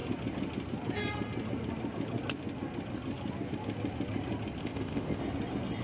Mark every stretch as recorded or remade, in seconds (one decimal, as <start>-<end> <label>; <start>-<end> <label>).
0.0-4.6 recorded; 4.6-5.2 remade; 5.2-5.8 recorded